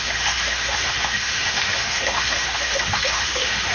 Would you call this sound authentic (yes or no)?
no